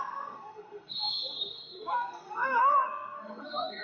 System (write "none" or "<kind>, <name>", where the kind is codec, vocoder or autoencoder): codec, SNAC